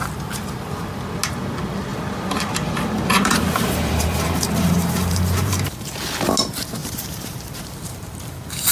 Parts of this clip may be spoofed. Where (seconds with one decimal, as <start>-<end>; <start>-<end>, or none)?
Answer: 1.9-5.8; 6.8-8.7